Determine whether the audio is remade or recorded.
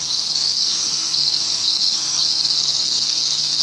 remade